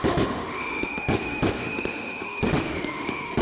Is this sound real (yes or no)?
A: no